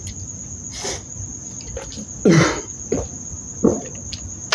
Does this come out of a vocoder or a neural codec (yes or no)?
no